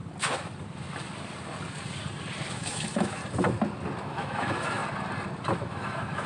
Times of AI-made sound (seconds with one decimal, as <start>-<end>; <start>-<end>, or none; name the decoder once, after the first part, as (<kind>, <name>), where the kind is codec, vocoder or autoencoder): 2.5-3.2 (autoencoder, DAC-VAE); 4.0-4.8; 5.5-6.3